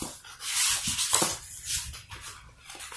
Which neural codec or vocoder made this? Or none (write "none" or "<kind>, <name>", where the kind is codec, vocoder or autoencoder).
none